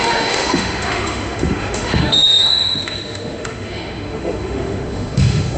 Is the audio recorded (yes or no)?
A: no